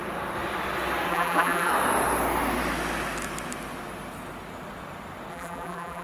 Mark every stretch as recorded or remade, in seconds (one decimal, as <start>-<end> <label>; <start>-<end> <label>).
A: 0.0-1.1 recorded; 1.1-1.7 remade; 1.7-5.3 recorded; 5.3-6.0 remade

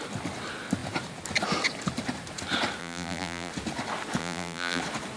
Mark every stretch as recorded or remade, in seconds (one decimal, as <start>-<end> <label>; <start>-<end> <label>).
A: 0.0-2.8 recorded; 2.8-3.5 remade; 3.5-4.2 recorded; 4.2-4.8 remade; 4.8-5.2 recorded